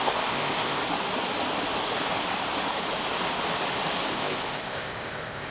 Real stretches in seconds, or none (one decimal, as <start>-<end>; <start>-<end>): 0.8-4.1